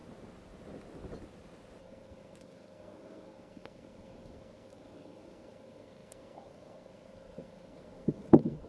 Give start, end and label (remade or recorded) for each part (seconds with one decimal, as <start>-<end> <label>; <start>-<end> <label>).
0.0-1.8 recorded; 1.8-8.7 remade